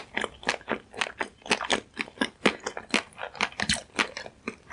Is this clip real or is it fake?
real